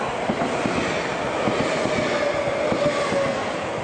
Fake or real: real